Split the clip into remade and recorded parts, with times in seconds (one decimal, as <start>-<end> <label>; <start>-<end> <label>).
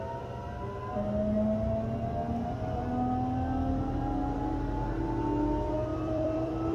0.0-5.9 recorded; 5.9-6.7 remade